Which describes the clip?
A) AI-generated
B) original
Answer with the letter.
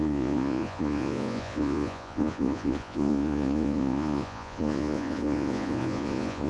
A